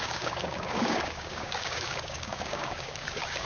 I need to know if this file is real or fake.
fake